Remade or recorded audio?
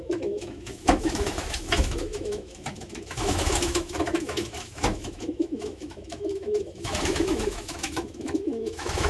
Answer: remade